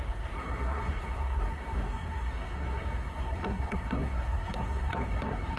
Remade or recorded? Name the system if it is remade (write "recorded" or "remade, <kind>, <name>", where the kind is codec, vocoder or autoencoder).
remade, codec, SNAC